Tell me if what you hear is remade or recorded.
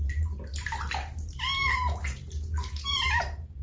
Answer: remade